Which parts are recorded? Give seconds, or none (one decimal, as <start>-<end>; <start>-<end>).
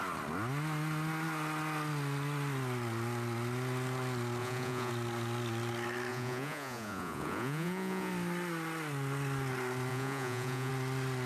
0.0-4.4; 4.9-6.1; 8.1-9.9; 10.7-11.3